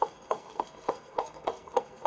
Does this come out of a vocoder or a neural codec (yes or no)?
yes